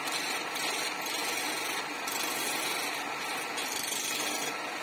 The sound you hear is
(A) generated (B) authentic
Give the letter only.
B